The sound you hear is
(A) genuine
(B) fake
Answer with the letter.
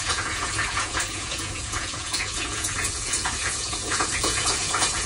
B